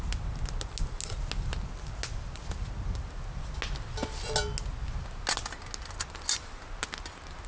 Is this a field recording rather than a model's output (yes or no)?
yes